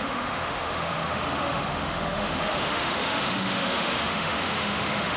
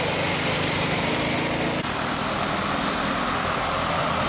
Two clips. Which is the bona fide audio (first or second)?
second